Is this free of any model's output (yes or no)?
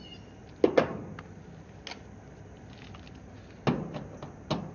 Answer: yes